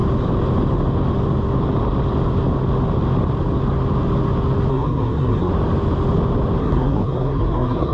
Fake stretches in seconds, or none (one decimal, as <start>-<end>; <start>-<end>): 4.7-5.5; 6.6-7.9